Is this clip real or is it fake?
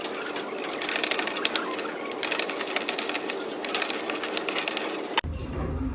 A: real